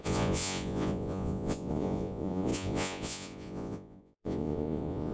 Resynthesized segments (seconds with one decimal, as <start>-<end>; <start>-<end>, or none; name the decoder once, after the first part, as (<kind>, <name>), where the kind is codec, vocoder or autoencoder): 0.0-5.1 (vocoder, Vocos)